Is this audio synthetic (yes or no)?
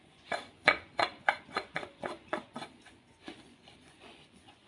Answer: yes